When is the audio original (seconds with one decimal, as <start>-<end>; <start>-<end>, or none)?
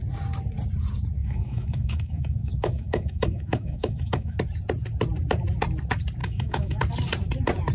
0.0-1.2; 4.4-6.2; 6.8-7.7